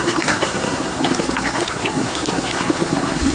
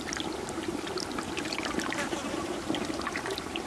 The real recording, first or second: second